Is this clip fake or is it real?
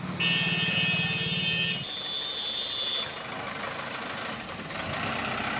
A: real